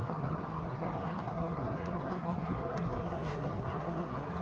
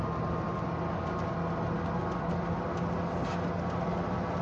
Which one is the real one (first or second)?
second